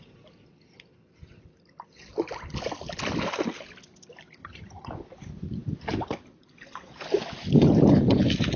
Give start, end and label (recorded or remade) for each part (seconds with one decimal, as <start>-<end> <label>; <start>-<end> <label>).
0.0-4.4 recorded; 4.4-4.9 remade; 4.9-8.6 recorded